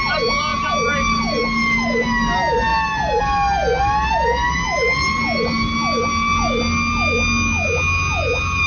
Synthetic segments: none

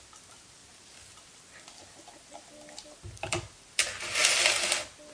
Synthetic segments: none

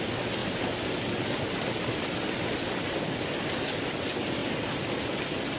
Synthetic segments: none

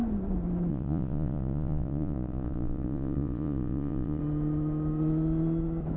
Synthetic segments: 0.7-4.2 (vocoder, Vocos)

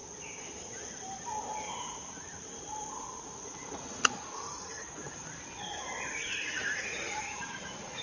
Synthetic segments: 1.7-5.0 (vocoder, Vocos); 6.1-8.0

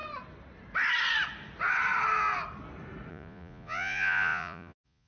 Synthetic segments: 3.1-5.1 (vocoder, Vocos)